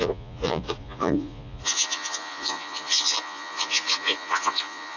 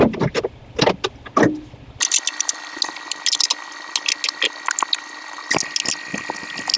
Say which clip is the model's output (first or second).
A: first